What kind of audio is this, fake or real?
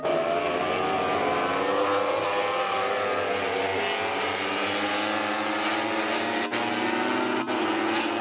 real